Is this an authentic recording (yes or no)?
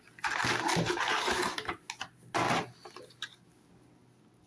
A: yes